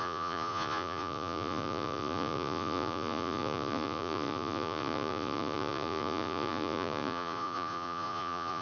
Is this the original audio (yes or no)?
no